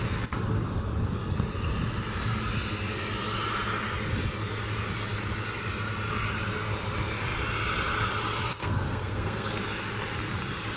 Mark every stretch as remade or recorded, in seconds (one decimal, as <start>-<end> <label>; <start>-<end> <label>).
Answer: 0.0-8.6 recorded; 8.6-9.6 remade; 9.6-10.8 recorded